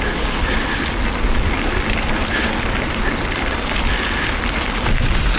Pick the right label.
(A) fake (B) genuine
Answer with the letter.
B